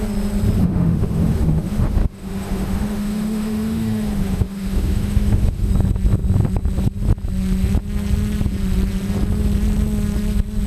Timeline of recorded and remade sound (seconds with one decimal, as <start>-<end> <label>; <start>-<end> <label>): 0.0-0.6 recorded; 0.6-5.7 remade; 5.7-10.7 recorded